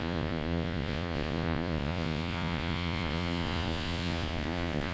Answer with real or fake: fake